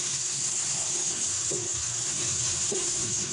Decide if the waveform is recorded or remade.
remade